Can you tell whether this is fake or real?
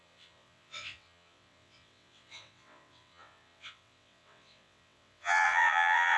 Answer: fake